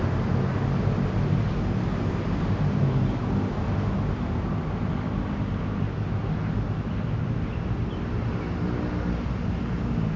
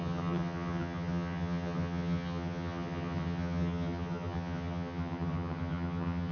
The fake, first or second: second